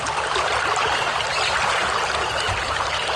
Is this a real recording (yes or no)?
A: yes